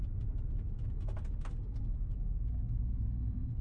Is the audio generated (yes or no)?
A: no